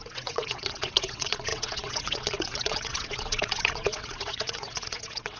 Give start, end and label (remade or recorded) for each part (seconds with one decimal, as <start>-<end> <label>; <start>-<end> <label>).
0.0-5.4 remade

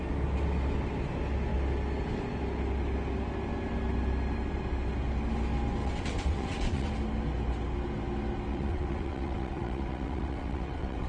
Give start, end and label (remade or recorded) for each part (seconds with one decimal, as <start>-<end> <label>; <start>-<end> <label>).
0.0-5.8 recorded; 5.8-6.9 remade; 6.9-8.5 recorded; 8.5-11.1 remade